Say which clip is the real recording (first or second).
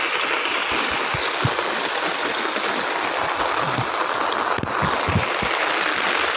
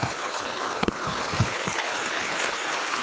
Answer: first